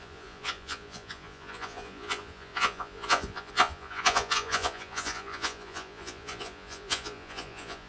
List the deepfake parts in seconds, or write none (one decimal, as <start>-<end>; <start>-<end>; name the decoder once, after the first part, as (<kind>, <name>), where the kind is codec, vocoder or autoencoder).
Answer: 0.0-7.9 (vocoder, Vocos)